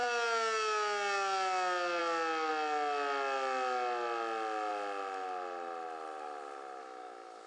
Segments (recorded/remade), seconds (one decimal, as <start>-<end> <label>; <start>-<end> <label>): 0.0-6.8 recorded; 6.8-7.5 remade